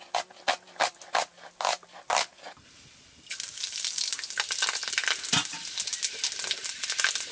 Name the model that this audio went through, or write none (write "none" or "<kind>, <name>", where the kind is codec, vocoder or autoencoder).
none